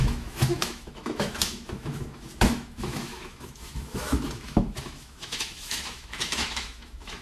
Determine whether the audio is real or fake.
fake